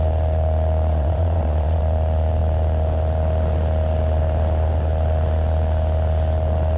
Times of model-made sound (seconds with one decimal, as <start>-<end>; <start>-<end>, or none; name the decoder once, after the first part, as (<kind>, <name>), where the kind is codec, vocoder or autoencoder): 0.9-1.8 (vocoder, Vocos)